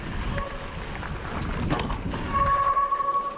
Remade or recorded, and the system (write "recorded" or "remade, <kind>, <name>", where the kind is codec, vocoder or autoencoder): recorded